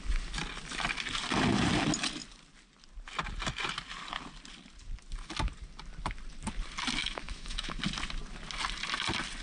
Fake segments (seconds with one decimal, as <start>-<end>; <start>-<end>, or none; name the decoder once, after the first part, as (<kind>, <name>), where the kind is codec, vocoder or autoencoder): 7.0-7.8 (autoencoder, DAC-VAE)